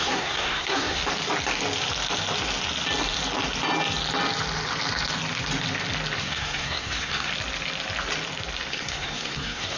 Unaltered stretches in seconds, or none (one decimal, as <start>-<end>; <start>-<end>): 1.0-6.2; 7.3-8.7